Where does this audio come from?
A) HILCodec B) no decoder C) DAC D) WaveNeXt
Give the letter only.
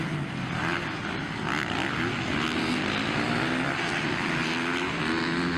B